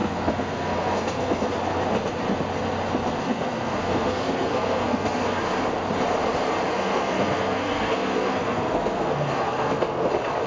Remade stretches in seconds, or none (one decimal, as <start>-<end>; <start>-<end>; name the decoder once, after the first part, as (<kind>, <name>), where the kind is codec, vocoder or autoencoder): 0.0-1.5 (codec, SNAC); 3.2-5.4; 6.7-10.1